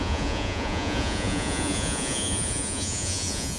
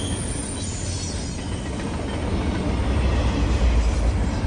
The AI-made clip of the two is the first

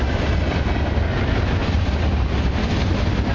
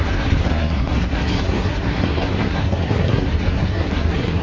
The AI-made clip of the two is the second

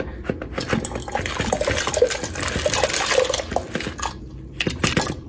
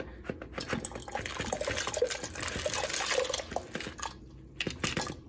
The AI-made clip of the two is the first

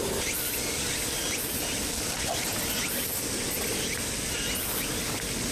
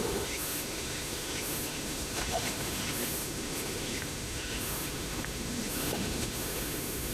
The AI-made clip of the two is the second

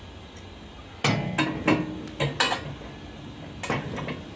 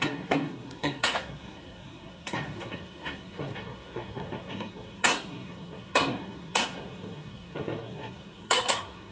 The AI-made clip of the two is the second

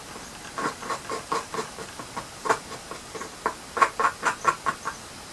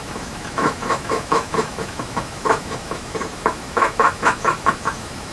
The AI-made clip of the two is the second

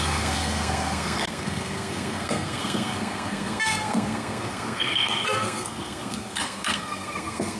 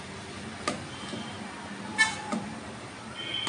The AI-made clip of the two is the first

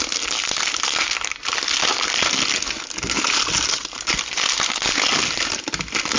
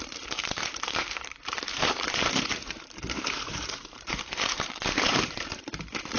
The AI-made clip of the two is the second